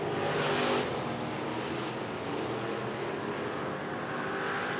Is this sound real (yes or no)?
yes